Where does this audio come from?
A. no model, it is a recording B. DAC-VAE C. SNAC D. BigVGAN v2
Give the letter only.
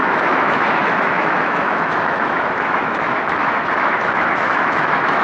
B